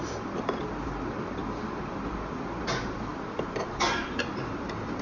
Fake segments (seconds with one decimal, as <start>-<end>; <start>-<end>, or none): none